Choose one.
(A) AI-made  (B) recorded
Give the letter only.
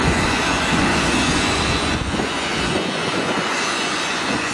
A